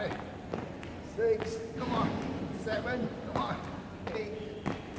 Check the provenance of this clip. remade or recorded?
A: recorded